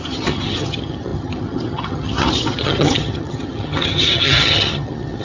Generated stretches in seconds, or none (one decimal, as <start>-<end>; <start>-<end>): 0.0-5.2